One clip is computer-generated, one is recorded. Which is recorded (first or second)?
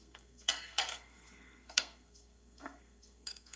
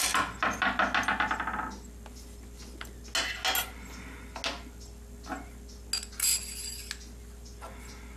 second